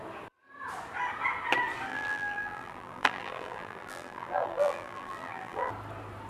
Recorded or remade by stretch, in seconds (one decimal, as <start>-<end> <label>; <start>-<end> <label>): 0.0-1.9 recorded; 1.9-5.7 remade; 5.7-6.3 recorded